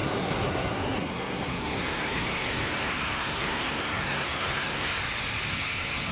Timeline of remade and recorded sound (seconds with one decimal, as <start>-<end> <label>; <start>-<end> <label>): 0.0-5.0 remade; 5.0-5.5 recorded; 5.5-6.1 remade